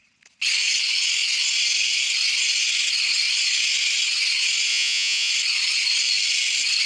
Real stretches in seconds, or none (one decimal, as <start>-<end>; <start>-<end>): 0.0-4.7; 5.3-6.9